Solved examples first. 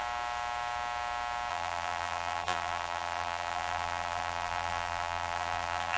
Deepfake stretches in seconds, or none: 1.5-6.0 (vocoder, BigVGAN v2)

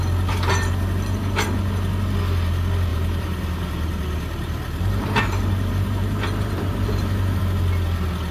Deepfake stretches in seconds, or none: 2.9-7.4 (vocoder, BigVGAN v2)

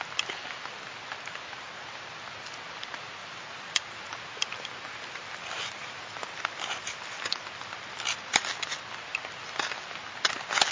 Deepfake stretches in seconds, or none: 3.2-7.2 (vocoder, BigVGAN v2)